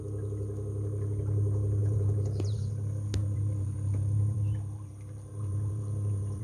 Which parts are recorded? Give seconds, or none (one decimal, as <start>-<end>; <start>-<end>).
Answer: 0.0-1.8; 2.7-3.2